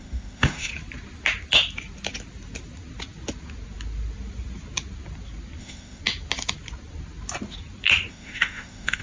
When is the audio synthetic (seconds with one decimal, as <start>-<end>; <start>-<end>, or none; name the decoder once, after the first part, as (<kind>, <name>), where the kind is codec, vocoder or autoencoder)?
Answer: 0.0-0.7 (autoencoder, DAC-VAE); 5.6-6.0; 8.1-9.0